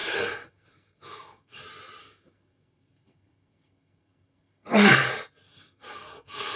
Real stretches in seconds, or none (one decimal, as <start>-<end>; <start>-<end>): 1.6-2.0; 5.1-5.5